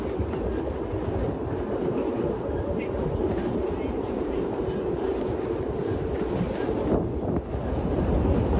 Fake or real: real